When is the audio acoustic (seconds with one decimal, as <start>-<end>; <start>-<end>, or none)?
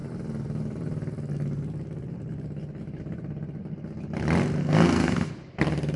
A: 0.0-4.6; 5.3-6.0